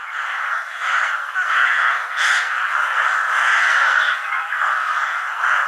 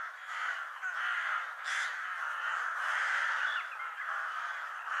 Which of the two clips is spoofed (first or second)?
first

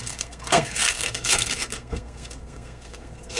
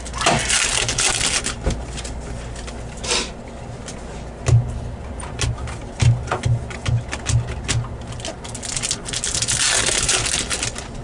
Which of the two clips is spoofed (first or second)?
first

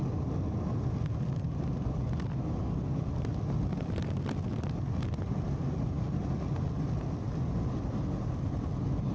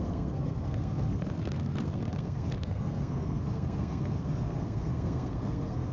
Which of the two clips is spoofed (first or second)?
second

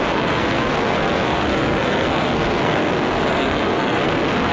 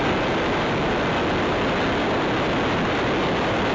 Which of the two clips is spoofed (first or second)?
first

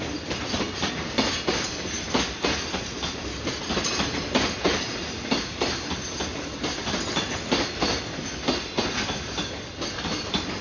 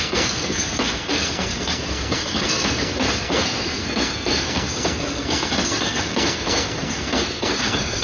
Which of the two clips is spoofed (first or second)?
second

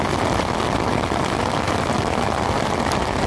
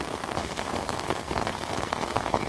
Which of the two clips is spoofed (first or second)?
second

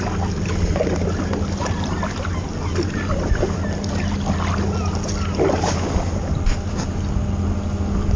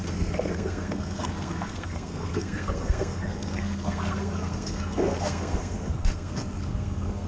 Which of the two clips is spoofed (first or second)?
second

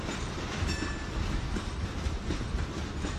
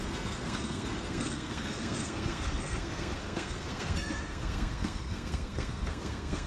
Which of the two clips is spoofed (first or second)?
second